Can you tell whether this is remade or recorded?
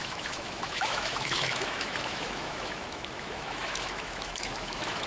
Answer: remade